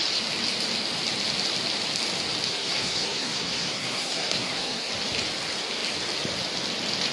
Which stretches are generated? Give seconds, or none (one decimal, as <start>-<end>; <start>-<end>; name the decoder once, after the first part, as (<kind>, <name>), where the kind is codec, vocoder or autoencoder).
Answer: 2.5-4.9 (codec, SNAC)